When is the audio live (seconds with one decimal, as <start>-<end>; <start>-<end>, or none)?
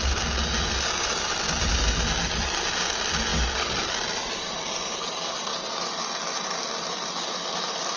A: 0.0-8.0